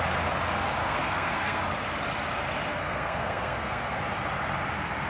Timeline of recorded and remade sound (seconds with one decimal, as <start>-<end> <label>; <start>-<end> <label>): 0.0-0.8 recorded; 0.8-1.6 remade; 1.6-2.7 recorded; 2.7-4.0 remade; 4.0-5.1 recorded